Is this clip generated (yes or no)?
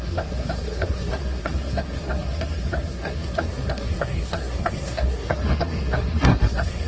yes